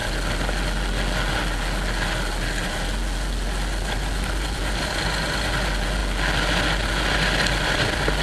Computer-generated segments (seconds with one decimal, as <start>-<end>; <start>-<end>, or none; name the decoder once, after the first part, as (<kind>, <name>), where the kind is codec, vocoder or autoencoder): none